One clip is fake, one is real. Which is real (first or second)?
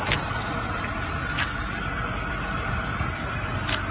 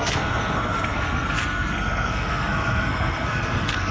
first